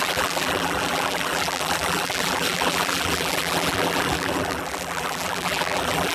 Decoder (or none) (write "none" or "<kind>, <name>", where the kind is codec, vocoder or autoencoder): vocoder, BigVGAN v2